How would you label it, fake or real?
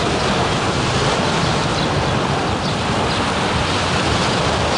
real